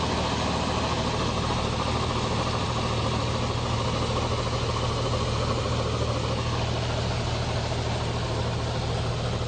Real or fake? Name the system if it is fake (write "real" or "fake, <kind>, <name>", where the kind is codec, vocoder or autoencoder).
real